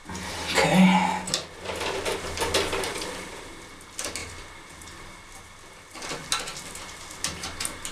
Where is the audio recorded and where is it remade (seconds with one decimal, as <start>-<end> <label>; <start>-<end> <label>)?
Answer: 0.0-2.9 recorded; 2.9-3.5 remade; 3.5-4.2 recorded; 4.2-6.1 remade; 6.1-7.9 recorded